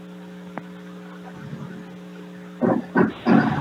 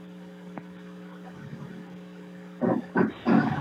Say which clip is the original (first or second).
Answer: first